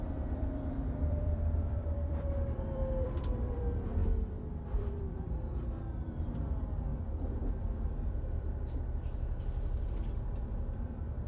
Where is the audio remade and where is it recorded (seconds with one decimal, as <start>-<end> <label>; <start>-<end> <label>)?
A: 0.0-4.0 remade; 4.0-4.8 recorded; 4.8-6.9 remade; 6.9-8.1 recorded; 8.1-11.3 remade